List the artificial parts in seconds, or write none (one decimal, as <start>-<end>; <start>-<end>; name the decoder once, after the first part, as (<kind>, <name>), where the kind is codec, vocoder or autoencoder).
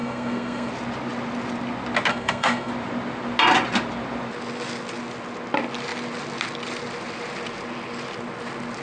0.0-0.7 (codec, SNAC); 2.1-2.7